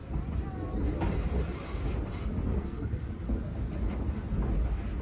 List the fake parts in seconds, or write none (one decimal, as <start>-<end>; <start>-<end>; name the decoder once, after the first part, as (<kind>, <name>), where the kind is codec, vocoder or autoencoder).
2.5-3.1 (codec, SNAC)

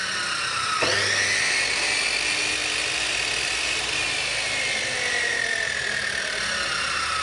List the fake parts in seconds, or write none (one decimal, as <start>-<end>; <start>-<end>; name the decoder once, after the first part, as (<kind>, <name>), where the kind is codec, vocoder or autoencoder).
none

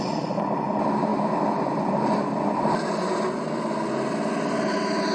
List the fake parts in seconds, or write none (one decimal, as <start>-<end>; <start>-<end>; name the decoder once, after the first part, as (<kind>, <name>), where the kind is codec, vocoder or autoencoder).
none